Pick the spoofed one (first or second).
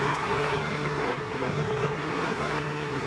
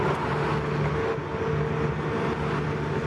first